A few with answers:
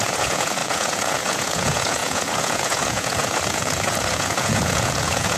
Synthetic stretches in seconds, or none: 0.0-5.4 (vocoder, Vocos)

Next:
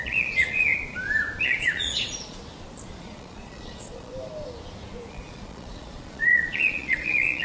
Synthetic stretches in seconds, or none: 0.0-0.7 (vocoder, Vocos); 1.4-2.4; 3.0-4.1; 5.1-7.4

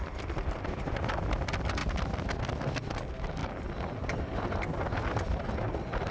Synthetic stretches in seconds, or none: 0.0-3.4 (vocoder, BigVGAN v2)

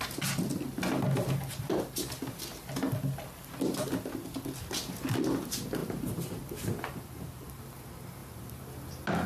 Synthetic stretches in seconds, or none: 5.8-7.5 (vocoder, BigVGAN v2)

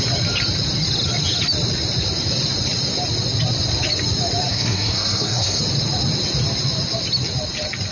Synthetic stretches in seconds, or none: 4.5-5.6 (codec, SNAC)

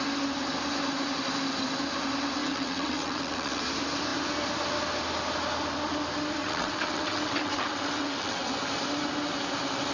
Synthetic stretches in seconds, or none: 2.4-3.6 (vocoder, WaveNeXt); 6.4-8.5